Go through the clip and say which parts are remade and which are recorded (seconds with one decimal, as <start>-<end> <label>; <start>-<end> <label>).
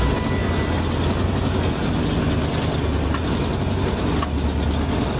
0.0-5.2 recorded